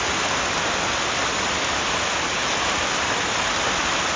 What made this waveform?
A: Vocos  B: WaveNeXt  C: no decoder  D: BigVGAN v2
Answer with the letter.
C